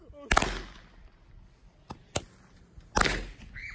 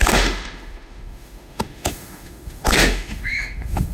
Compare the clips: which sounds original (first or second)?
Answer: first